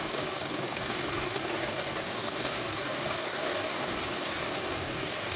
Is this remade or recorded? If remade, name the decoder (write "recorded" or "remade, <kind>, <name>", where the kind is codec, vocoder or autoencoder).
remade, codec, DAC